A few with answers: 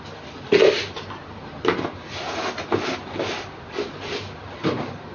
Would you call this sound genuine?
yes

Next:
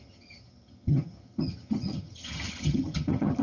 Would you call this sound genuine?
no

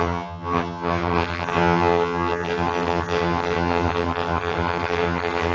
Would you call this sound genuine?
no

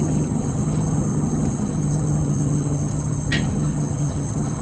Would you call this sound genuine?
no